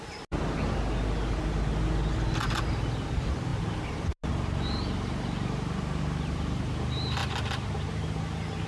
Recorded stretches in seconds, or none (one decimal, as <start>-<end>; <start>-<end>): 0.0-8.7